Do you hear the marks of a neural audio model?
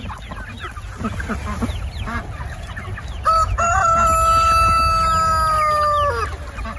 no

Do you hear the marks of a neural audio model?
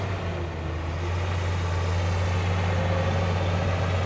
no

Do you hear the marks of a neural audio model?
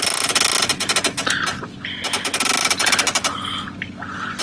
no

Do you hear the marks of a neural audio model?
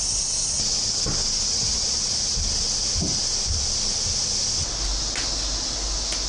no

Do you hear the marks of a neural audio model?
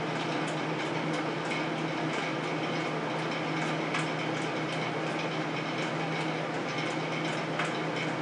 no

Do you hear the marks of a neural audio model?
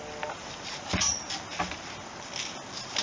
no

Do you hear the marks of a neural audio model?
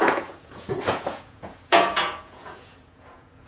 yes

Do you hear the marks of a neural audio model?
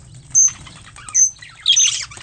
no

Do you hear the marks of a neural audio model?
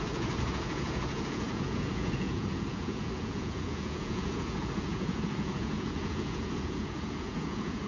yes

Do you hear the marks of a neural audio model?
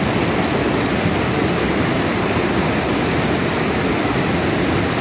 no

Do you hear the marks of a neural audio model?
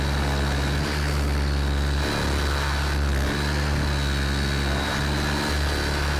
no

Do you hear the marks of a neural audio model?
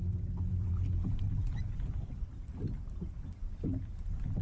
no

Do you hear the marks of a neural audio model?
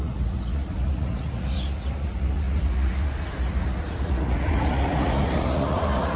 yes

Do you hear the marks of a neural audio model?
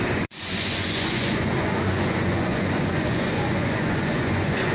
yes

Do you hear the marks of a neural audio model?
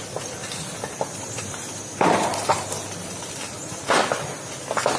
no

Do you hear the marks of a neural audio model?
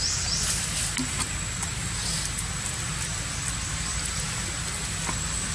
no